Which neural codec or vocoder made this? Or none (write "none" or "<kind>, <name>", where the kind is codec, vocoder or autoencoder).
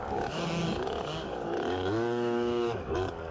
codec, DAC